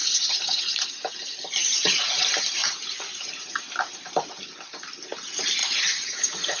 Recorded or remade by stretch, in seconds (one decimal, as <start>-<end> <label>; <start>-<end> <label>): 0.0-0.9 remade; 0.9-1.6 recorded; 1.6-2.2 remade; 2.2-2.6 recorded; 2.6-3.6 remade; 3.6-5.6 recorded; 5.6-6.6 remade

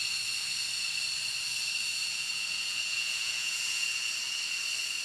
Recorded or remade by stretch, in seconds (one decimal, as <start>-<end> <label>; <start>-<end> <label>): 0.0-1.9 recorded; 1.9-4.1 remade; 4.1-5.0 recorded

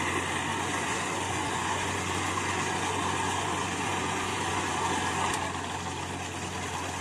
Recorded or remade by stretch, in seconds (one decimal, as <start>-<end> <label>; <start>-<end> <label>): 0.0-0.5 recorded; 0.5-4.7 remade; 4.7-7.0 recorded